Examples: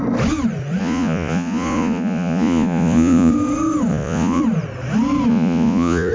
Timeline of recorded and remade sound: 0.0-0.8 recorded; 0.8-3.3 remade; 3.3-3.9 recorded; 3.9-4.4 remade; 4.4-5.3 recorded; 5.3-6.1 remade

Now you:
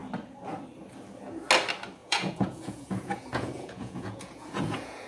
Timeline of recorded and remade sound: 0.0-2.0 recorded; 2.0-5.1 remade